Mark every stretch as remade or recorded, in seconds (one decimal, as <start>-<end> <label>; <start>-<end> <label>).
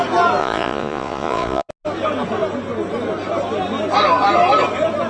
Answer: 0.0-0.4 recorded; 0.4-1.7 remade; 1.7-5.1 recorded